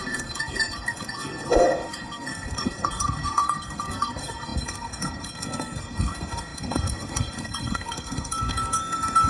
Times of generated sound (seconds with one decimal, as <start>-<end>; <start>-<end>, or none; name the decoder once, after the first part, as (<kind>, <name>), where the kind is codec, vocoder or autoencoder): 0.0-9.3 (codec, SNAC)